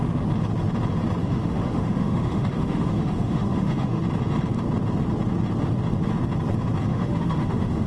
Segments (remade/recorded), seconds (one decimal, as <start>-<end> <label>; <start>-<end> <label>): 0.0-1.2 recorded; 1.2-4.0 remade; 4.0-6.9 recorded; 6.9-7.9 remade